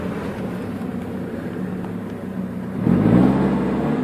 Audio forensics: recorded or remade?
recorded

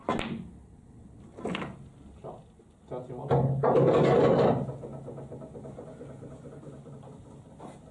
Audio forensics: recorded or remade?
recorded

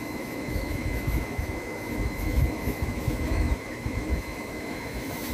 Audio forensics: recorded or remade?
remade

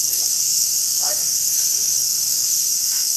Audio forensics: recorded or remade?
remade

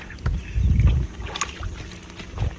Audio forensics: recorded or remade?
recorded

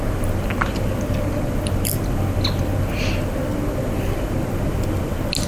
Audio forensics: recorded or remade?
recorded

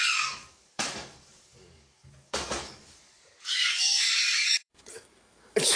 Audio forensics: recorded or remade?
remade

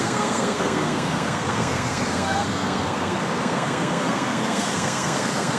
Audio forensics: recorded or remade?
remade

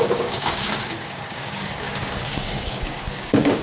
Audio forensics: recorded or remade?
remade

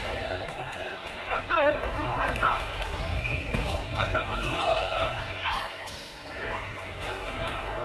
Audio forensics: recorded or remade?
remade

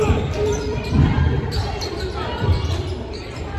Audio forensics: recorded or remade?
remade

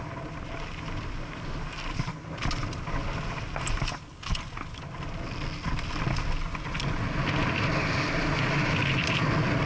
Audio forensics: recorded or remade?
recorded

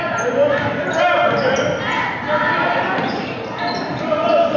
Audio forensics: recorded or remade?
recorded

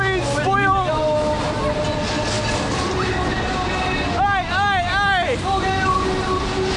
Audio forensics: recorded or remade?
recorded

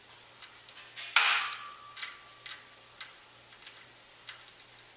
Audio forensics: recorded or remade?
recorded